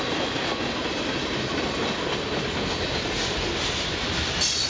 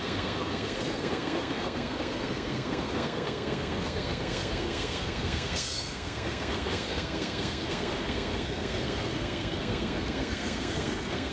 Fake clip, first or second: second